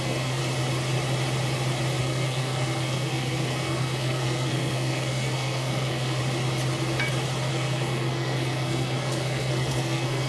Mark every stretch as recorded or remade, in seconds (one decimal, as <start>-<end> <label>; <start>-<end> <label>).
0.0-0.4 remade; 0.4-2.0 recorded; 2.0-6.2 remade; 6.2-7.5 recorded; 7.5-10.3 remade

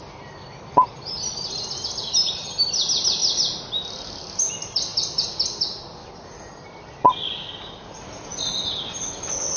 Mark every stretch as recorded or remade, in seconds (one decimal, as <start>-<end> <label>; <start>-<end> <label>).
0.0-9.6 recorded

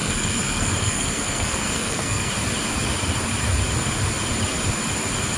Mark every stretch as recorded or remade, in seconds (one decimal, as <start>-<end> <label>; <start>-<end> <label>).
0.0-2.3 remade; 2.3-5.4 recorded

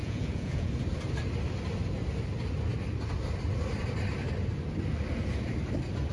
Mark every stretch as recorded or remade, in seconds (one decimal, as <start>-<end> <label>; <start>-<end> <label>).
0.0-0.7 remade; 0.7-6.1 recorded

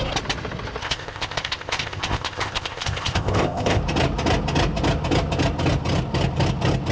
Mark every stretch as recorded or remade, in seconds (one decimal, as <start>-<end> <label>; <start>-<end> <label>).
0.0-0.8 recorded; 0.8-3.8 remade; 3.8-6.9 recorded